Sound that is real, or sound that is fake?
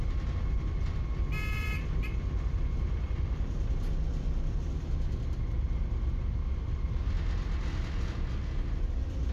real